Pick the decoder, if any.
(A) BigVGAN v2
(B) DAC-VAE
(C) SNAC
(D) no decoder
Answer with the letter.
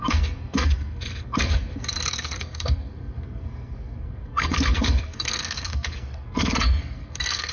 C